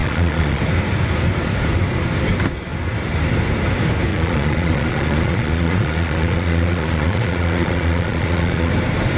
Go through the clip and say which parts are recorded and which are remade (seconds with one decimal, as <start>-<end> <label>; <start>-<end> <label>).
0.0-0.6 remade; 0.6-4.1 recorded; 4.1-8.7 remade; 8.7-9.2 recorded